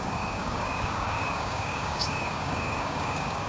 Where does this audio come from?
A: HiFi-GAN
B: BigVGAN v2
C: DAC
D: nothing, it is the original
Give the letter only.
C